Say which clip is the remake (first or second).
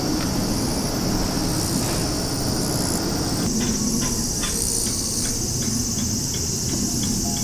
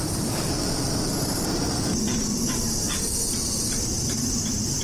second